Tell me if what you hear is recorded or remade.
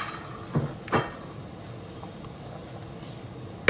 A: recorded